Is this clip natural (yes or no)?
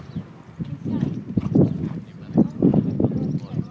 yes